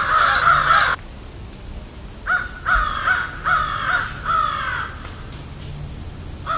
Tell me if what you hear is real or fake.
real